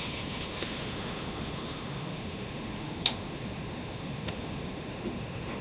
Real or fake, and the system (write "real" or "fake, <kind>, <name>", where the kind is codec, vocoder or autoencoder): fake, autoencoder, DAC-VAE